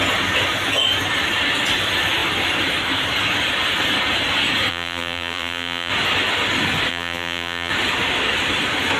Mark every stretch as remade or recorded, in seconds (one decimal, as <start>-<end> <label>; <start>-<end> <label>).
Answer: 0.0-4.7 recorded; 4.7-5.9 remade; 5.9-6.9 recorded; 6.9-7.7 remade; 7.7-9.0 recorded